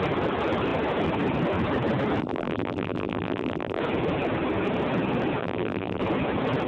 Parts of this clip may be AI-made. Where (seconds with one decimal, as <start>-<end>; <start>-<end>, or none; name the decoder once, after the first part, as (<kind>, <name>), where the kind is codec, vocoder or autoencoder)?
2.2-3.8 (vocoder, BigVGAN v2); 5.4-6.0